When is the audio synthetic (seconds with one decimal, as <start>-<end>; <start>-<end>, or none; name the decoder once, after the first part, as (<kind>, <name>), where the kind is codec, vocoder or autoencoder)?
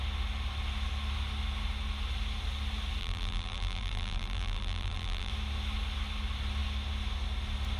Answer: 3.0-5.3 (vocoder, BigVGAN v2)